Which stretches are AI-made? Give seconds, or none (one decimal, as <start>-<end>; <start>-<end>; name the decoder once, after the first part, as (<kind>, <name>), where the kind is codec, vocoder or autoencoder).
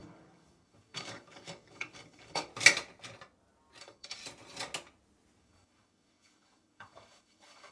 0.0-2.5 (codec, DAC); 3.8-4.2; 5.4-7.7